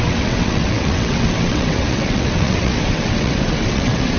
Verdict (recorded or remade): remade